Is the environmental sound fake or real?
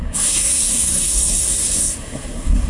fake